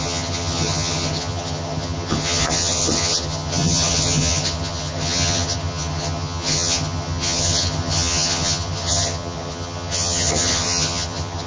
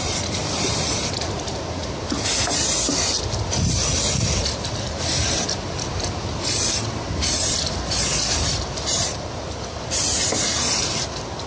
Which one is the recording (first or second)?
second